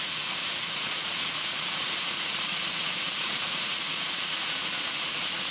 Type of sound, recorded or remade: remade